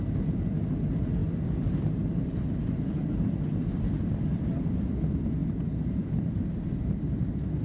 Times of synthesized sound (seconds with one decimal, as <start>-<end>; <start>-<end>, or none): 0.0-7.6